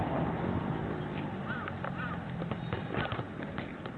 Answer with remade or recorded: recorded